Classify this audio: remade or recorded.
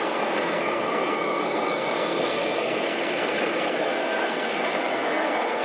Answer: remade